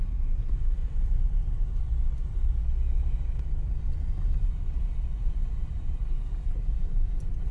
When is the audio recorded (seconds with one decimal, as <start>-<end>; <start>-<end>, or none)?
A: 0.8-4.2